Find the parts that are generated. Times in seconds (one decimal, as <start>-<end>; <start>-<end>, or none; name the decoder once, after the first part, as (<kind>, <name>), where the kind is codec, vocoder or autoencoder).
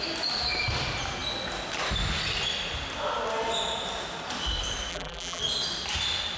4.9-5.4 (vocoder, BigVGAN v2)